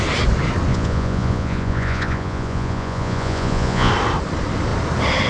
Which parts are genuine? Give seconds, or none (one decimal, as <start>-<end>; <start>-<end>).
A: 0.0-0.7; 3.9-5.3